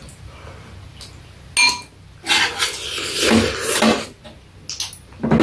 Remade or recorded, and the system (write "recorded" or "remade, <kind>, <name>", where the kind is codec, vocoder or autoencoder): recorded